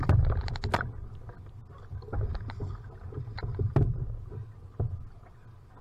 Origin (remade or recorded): recorded